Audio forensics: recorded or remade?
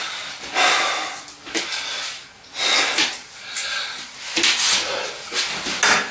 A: recorded